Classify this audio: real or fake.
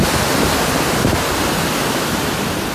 fake